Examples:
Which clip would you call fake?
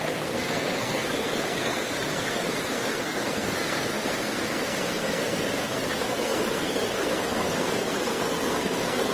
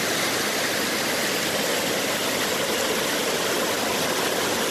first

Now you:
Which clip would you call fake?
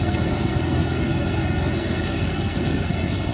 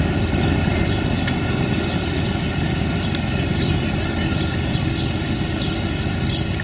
first